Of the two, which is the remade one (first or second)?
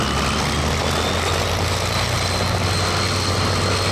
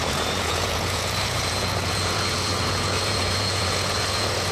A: second